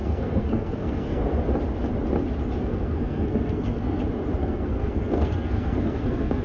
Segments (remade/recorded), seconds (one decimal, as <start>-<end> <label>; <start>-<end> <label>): 0.0-1.2 remade; 1.2-2.6 recorded; 2.6-4.0 remade; 4.0-4.4 recorded; 4.4-6.4 remade